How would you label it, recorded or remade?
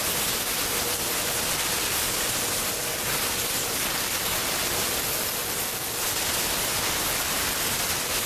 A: recorded